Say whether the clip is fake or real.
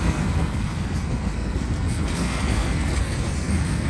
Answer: fake